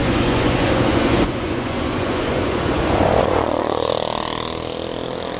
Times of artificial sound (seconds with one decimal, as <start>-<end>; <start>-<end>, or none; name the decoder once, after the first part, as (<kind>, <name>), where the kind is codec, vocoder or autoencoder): 0.0-3.9 (vocoder, Vocos)